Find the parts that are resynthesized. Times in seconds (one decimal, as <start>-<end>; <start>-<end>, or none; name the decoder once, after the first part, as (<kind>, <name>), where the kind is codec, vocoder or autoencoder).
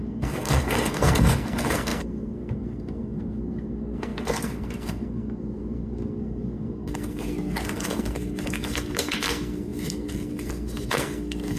0.0-11.6 (codec, SNAC)